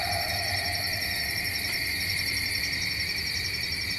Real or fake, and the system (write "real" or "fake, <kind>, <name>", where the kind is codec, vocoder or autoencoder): real